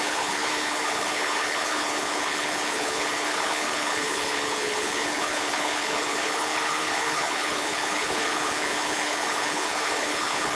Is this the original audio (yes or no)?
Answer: no